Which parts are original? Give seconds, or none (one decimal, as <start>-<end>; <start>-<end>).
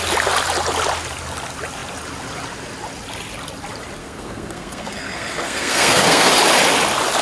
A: 0.0-4.0; 6.3-7.2